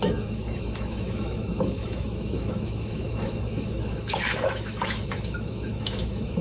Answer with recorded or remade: remade